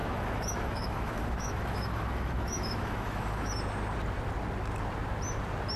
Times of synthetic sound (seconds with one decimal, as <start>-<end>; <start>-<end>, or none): 0.0-3.5